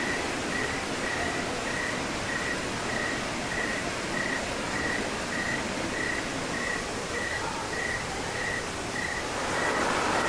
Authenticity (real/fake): real